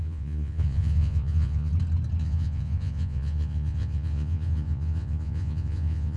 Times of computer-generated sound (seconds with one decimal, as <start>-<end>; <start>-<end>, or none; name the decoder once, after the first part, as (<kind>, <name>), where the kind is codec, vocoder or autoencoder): 0.0-1.7 (vocoder, Vocos); 2.2-6.2